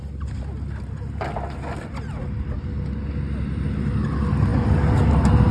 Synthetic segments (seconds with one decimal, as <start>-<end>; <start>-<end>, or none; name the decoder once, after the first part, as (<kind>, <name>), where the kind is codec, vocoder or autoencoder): none